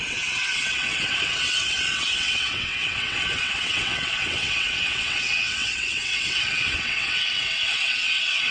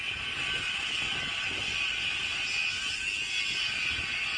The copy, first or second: first